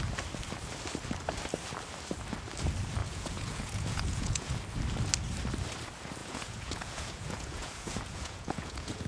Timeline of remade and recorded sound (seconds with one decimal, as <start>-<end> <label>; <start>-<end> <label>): 0.0-3.0 recorded; 3.0-4.5 remade; 4.5-6.2 recorded; 6.2-9.1 remade